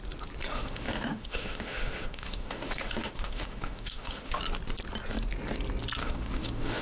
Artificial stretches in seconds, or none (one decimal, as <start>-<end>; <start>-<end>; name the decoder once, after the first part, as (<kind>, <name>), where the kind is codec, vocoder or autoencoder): 0.5-4.4 (autoencoder, DAC-VAE); 6.0-6.8